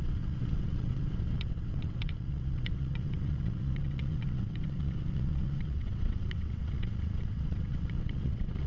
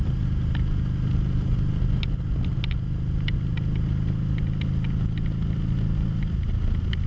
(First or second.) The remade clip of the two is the first